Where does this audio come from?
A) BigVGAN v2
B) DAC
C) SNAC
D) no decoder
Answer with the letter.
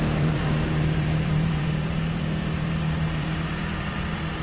A